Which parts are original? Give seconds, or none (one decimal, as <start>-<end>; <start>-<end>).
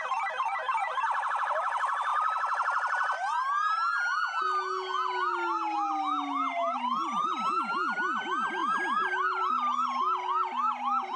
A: 0.0-2.1; 4.4-8.6; 9.4-11.2